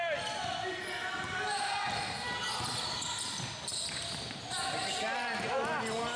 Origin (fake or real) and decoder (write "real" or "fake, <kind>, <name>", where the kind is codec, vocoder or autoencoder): real